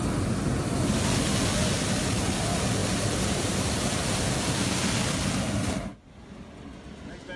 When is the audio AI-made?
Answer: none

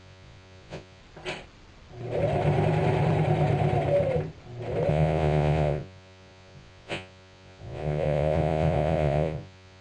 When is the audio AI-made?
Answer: 0.0-1.0 (vocoder, Vocos); 4.9-9.8

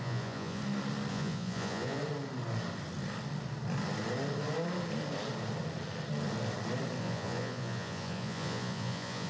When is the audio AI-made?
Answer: 0.0-0.6 (vocoder, Vocos); 1.1-2.0; 7.0-9.3

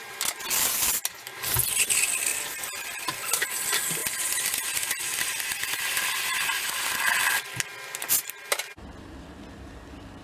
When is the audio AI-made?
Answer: none